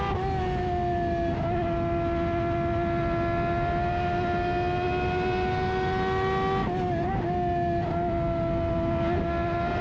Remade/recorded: recorded